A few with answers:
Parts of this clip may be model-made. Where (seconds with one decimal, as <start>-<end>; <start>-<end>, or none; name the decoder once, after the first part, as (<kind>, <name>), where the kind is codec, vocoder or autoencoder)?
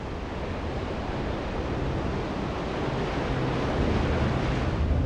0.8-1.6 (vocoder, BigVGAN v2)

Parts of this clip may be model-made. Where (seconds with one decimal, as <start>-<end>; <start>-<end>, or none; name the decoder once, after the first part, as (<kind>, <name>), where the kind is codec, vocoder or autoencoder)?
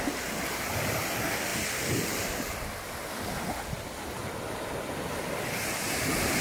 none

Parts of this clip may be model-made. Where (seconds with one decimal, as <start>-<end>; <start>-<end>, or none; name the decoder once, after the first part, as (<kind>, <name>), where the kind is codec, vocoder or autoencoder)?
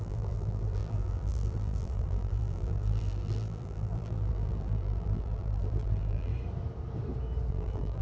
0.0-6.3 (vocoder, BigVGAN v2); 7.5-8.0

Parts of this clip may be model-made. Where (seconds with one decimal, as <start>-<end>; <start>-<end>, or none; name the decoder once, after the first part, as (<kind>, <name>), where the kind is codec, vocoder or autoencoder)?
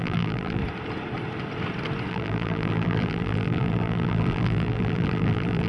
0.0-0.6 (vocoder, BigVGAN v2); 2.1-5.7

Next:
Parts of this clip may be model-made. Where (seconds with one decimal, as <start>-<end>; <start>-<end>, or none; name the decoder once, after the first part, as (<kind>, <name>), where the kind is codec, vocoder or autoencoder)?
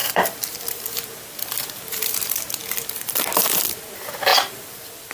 0.0-1.2 (vocoder, BigVGAN v2); 2.6-3.2; 4.3-5.1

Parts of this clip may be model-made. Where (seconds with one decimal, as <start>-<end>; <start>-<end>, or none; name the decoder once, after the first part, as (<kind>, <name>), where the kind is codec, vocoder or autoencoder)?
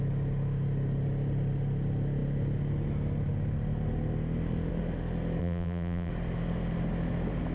5.4-6.1 (vocoder, BigVGAN v2)